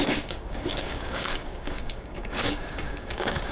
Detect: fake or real fake